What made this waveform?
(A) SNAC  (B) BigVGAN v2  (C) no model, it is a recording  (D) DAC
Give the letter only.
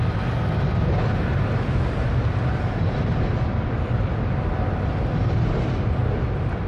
B